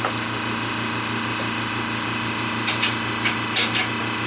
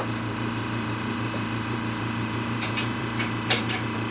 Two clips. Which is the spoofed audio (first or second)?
second